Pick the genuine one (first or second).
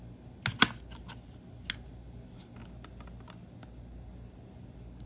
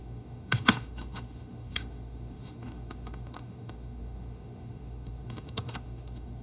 first